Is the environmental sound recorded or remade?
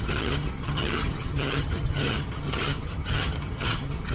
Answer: remade